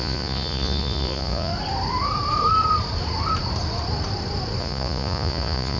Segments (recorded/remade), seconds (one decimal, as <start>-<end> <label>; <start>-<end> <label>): 0.0-1.5 remade; 1.5-4.6 recorded; 4.6-5.8 remade